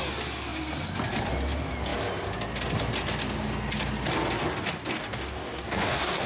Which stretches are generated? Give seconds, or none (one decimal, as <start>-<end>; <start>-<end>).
4.9-6.3